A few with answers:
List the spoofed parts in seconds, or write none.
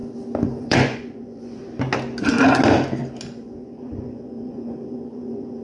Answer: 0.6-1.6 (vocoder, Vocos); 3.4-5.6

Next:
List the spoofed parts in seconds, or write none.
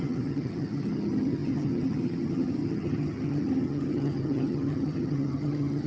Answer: 0.0-5.9 (vocoder, HiFi-GAN)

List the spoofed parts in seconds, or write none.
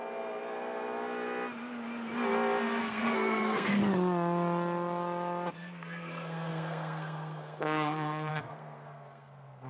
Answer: 2.8-3.8 (codec, SNAC); 5.5-9.7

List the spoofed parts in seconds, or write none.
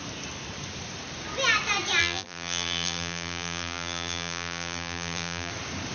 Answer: 2.0-5.5 (vocoder, BigVGAN v2)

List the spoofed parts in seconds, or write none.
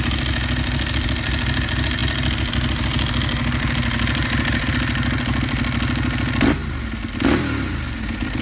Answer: none